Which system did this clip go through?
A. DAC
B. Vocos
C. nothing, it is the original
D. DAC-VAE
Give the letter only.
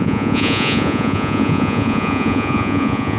B